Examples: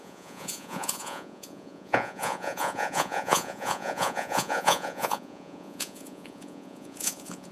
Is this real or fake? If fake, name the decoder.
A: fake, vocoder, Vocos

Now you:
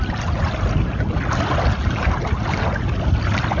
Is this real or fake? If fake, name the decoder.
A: real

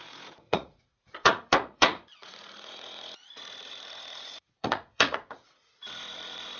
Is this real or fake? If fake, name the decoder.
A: fake, vocoder, Vocos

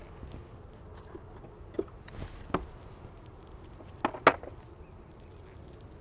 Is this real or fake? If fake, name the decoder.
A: real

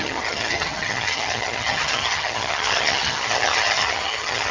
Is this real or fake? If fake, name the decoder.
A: fake, vocoder, HiFi-GAN